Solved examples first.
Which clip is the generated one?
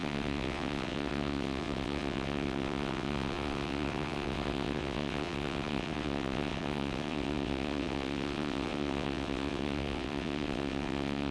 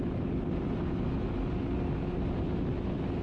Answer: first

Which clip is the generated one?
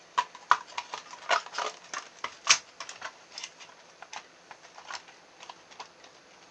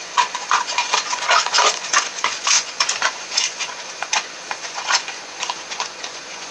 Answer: second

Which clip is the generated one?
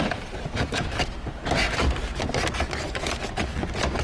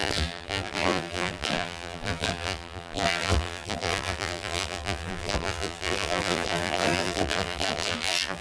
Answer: second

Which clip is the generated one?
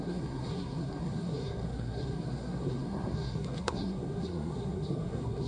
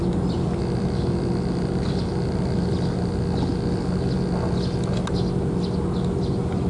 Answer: first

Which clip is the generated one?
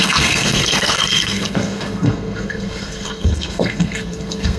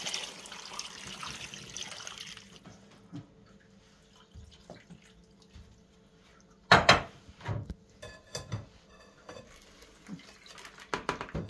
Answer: first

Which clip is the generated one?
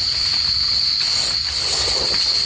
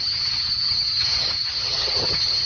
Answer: second